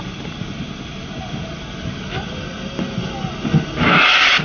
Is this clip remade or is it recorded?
recorded